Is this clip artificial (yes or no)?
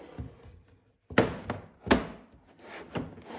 no